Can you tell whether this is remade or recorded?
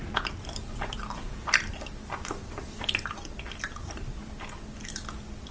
remade